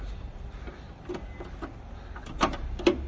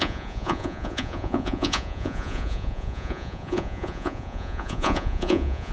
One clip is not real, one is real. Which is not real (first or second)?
second